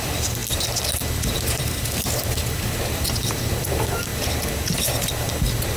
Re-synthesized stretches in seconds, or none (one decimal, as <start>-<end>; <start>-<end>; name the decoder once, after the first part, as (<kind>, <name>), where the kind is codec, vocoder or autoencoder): 0.0-0.4 (vocoder, BigVGAN v2); 1.6-4.1